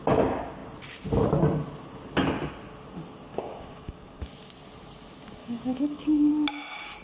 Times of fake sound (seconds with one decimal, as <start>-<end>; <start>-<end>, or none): 3.3-4.3; 5.4-6.3